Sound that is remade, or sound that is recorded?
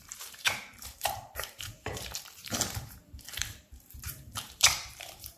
remade